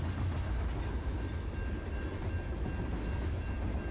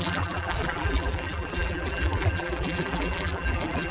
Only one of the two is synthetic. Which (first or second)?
second